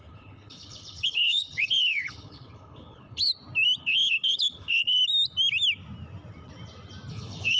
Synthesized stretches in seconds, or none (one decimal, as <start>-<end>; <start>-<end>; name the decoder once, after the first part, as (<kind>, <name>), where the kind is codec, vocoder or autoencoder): 0.0-3.3 (codec, HILCodec); 3.8-5.0; 7.1-7.6